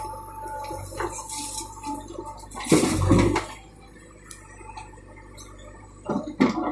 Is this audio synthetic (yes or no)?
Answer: no